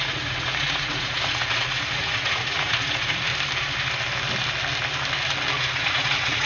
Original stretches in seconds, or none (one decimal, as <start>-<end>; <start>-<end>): 3.3-5.6